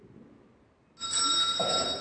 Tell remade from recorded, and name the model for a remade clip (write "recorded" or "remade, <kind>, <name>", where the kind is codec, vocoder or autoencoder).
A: recorded